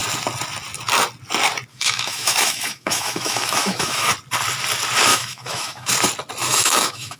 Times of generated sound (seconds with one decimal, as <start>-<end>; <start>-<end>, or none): 1.7-4.1; 5.1-5.9; 6.5-7.2